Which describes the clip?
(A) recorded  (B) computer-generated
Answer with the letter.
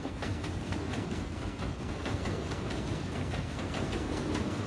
B